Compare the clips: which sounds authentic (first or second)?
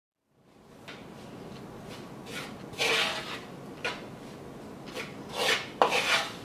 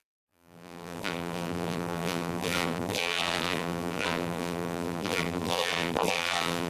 first